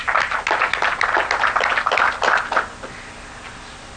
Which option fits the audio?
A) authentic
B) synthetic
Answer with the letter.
A